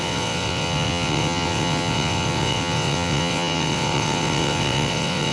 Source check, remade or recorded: remade